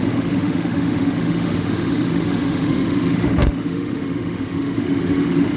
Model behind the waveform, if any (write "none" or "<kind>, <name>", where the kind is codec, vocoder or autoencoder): autoencoder, DAC-VAE